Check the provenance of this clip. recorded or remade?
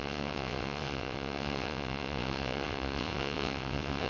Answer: remade